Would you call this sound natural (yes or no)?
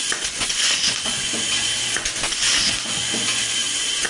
no